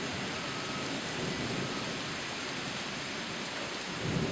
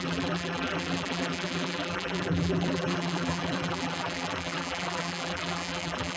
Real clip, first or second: first